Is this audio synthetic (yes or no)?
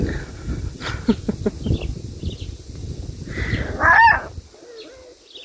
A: no